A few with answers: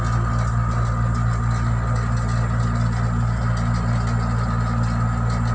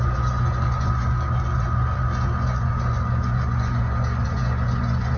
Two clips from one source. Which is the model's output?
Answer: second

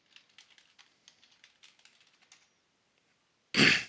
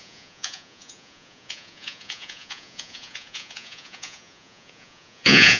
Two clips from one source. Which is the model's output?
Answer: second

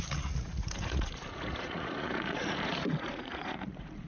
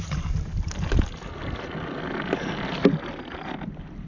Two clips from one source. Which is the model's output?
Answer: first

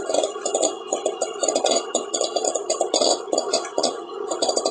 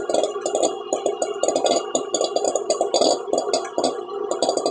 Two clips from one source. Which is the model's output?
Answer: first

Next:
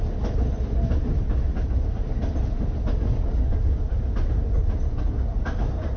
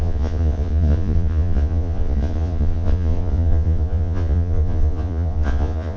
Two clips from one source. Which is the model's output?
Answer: second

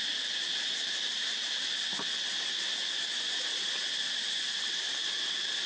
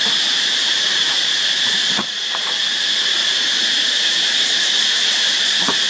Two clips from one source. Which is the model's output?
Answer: second